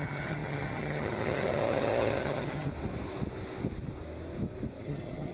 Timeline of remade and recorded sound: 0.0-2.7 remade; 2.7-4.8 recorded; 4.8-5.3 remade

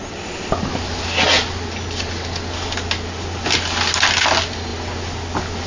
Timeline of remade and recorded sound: 0.0-5.7 recorded

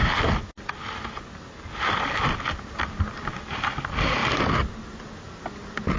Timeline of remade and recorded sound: 0.0-6.0 recorded

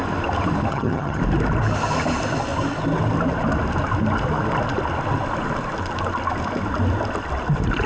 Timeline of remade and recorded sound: 0.0-0.7 recorded; 0.7-1.2 remade; 1.2-7.9 recorded

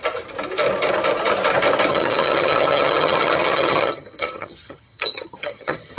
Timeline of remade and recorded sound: 0.0-1.9 recorded; 1.9-6.0 remade

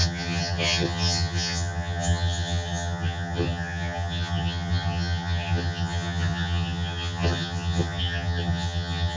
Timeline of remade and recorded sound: 0.0-9.2 remade